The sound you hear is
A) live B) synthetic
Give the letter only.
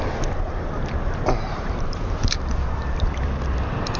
B